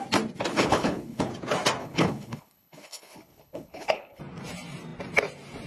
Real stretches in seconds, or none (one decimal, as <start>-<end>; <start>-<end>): 0.0-0.5; 1.3-1.8; 4.2-5.7